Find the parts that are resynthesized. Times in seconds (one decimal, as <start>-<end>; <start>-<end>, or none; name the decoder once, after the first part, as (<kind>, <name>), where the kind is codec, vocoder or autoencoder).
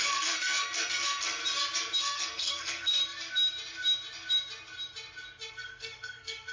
0.0-1.4 (codec, SNAC); 2.0-3.0; 5.5-6.5